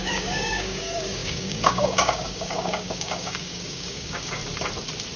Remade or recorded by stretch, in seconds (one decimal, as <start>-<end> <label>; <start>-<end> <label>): 0.0-4.4 remade; 4.4-5.2 recorded